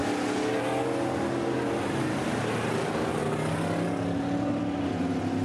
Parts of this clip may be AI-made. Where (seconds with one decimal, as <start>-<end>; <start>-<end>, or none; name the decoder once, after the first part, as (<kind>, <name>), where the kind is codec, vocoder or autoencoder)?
none